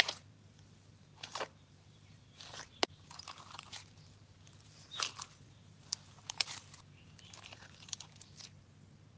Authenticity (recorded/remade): remade